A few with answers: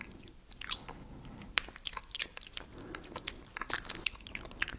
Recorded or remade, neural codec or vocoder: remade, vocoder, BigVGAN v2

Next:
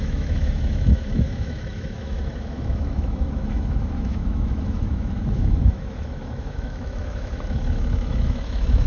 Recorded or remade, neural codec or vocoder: remade, autoencoder, DAC-VAE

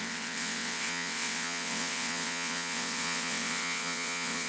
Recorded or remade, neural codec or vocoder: remade, vocoder, WaveNeXt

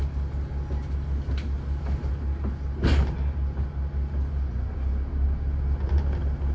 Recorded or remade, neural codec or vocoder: recorded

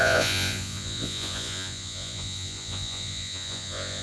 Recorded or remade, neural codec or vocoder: remade, vocoder, Vocos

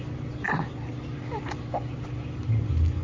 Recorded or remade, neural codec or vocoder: recorded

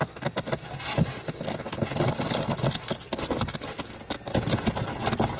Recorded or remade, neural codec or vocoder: recorded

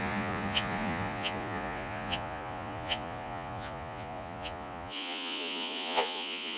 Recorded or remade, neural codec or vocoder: remade, vocoder, Vocos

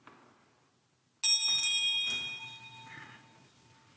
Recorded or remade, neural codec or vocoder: recorded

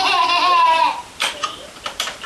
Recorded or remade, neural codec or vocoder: remade, vocoder, BigVGAN v2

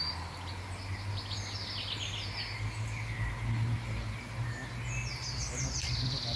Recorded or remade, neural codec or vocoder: recorded